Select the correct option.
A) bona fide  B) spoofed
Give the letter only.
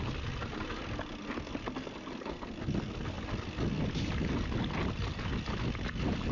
A